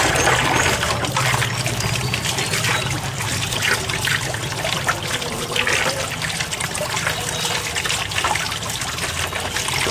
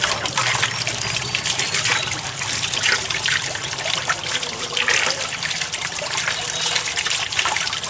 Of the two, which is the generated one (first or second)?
second